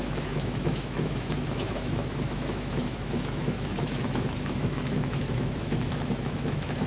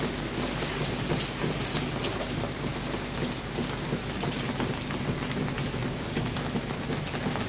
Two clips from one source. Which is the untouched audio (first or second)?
second